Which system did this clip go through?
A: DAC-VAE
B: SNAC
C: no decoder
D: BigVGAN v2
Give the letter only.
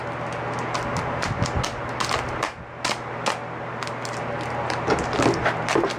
C